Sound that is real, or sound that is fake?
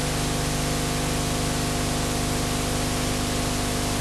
real